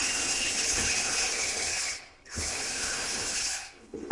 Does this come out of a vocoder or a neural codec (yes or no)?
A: yes